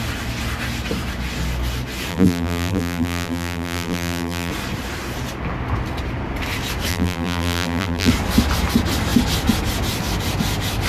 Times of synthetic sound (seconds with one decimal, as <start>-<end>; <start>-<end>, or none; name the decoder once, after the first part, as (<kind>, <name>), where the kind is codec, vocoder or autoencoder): 2.1-4.5 (vocoder, BigVGAN v2); 6.9-8.1